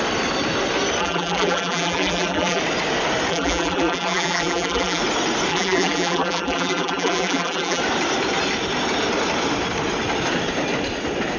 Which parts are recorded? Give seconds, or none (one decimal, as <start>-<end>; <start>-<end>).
0.0-1.0; 2.6-3.3; 5.0-5.5; 7.8-11.4